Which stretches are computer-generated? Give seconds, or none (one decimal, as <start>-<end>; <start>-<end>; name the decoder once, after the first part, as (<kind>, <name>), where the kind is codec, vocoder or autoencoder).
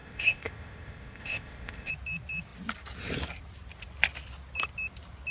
0.0-1.9 (codec, ZipCodec)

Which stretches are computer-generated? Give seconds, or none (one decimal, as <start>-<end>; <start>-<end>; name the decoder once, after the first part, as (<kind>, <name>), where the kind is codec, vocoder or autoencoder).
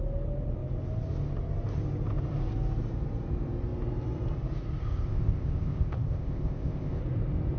4.8-7.0 (codec, ZipCodec)